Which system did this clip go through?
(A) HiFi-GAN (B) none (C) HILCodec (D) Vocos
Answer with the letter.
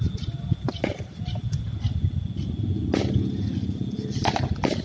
B